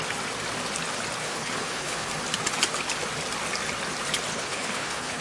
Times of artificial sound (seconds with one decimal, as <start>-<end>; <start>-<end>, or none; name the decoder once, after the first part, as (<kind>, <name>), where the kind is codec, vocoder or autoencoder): 1.2-2.1 (codec, HILCodec); 4.3-5.2